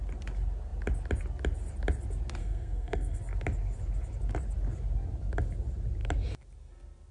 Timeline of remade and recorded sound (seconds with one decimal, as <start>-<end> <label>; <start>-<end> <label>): 0.0-2.4 recorded; 2.4-3.2 remade; 3.2-7.1 recorded